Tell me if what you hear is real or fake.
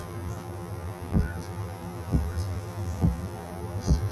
fake